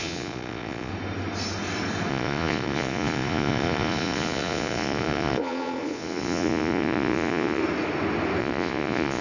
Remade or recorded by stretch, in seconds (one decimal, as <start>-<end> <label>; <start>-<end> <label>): 0.0-0.9 remade; 0.9-2.1 recorded; 2.1-7.6 remade; 7.6-8.4 recorded; 8.4-9.2 remade